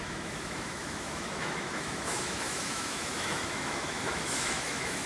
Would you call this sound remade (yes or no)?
yes